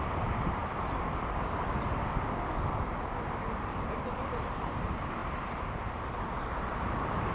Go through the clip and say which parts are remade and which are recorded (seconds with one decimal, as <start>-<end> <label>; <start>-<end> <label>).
0.0-0.6 remade; 0.6-3.7 recorded; 3.7-7.3 remade